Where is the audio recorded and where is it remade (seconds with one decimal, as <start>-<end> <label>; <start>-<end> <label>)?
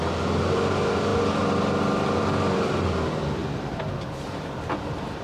0.0-5.2 recorded